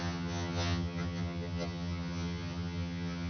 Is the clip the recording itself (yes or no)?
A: no